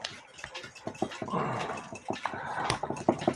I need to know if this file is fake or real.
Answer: real